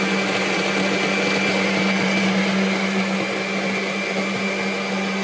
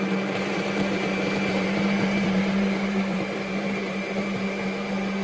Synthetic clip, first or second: second